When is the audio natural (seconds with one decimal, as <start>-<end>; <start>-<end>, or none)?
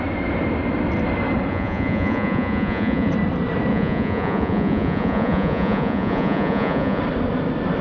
0.0-1.5; 3.1-3.7; 7.0-7.8